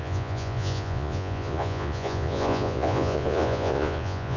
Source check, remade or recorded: remade